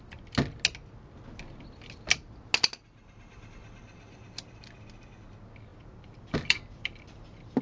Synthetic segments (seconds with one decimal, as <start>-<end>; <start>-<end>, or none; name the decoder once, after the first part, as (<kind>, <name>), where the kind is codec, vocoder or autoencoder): 5.7-7.6 (vocoder, BigVGAN v2)